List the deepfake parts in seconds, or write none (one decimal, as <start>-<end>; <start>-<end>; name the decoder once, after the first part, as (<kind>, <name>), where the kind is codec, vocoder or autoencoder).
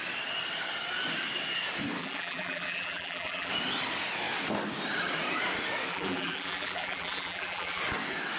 2.0-3.5 (vocoder, BigVGAN v2); 5.9-7.8